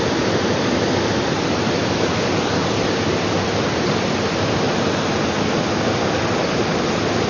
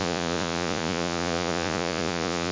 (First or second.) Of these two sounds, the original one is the first